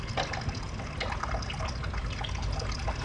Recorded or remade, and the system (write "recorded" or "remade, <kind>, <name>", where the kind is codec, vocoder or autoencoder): recorded